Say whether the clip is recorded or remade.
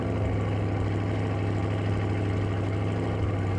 recorded